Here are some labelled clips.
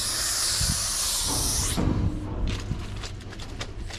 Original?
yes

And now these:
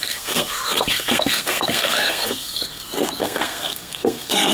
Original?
no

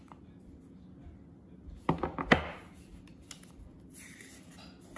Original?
yes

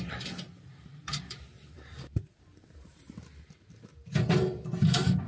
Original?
no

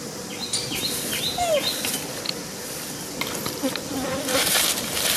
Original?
yes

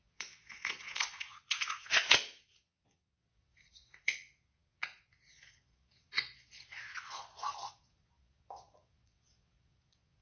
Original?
no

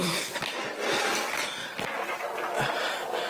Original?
yes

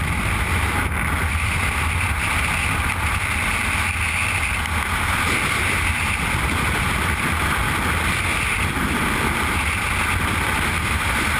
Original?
yes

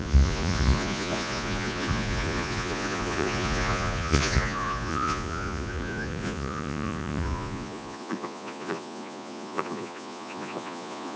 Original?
no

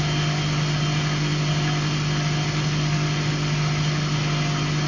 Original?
yes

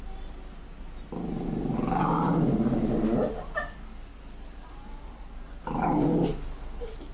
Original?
yes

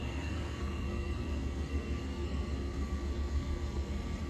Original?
no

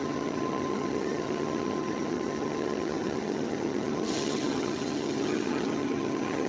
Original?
no